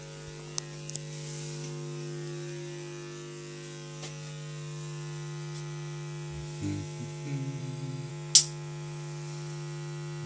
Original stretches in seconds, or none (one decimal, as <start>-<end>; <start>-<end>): 0.0-7.6; 8.1-10.3